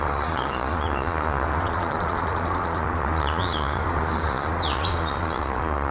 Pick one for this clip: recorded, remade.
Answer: remade